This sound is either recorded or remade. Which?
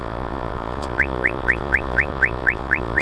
remade